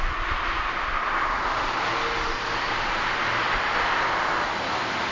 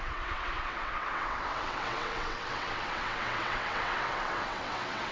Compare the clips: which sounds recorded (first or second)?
first